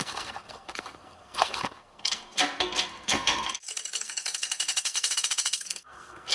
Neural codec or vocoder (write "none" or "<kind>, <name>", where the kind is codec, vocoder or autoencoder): codec, SNAC